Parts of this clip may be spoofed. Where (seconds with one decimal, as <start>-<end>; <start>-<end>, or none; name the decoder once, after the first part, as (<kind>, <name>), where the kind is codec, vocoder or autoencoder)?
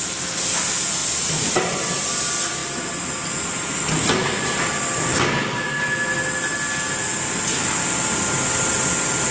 5.1-5.7 (codec, DAC)